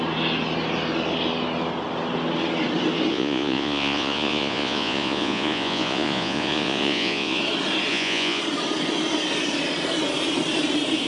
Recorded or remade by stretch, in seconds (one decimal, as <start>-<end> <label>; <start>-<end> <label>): 0.0-3.1 recorded; 3.1-7.4 remade; 7.4-7.9 recorded; 7.9-8.4 remade; 8.4-11.1 recorded